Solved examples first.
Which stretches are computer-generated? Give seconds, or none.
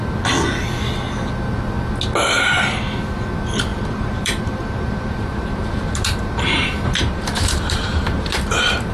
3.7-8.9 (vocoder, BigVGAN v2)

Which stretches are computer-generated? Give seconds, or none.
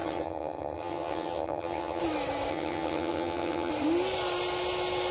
0.0-2.0 (vocoder, HiFi-GAN); 2.5-3.7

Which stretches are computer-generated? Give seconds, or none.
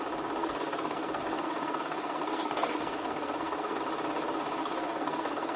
0.4-3.8 (codec, SNAC); 4.6-5.6